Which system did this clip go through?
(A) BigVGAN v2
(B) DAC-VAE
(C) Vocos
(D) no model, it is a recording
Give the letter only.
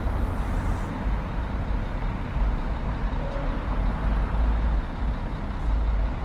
D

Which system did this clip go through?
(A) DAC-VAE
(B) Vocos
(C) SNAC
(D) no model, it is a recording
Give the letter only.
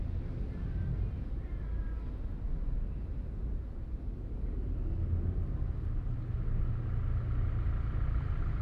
D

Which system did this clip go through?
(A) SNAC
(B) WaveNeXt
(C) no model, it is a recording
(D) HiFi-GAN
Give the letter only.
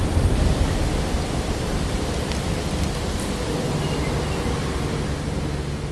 C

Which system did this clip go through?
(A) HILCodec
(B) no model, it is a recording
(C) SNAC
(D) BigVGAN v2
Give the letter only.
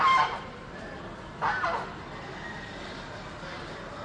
B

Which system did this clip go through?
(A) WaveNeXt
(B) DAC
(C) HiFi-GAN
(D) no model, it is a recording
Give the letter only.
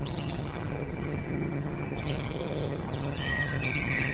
C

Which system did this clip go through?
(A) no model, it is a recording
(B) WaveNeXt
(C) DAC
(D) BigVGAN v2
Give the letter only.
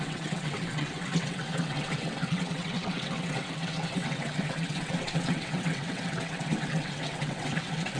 B